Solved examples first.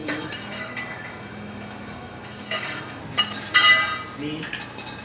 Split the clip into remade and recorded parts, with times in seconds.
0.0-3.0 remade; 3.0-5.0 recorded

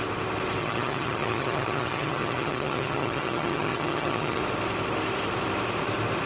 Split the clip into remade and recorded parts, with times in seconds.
0.0-0.6 recorded; 0.6-4.4 remade; 4.4-6.3 recorded